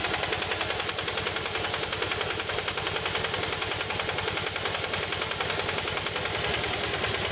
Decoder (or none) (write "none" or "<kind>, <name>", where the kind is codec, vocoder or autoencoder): none